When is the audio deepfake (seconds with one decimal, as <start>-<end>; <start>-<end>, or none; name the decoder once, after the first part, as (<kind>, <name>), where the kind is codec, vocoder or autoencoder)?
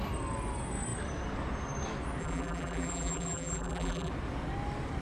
2.2-4.1 (vocoder, BigVGAN v2)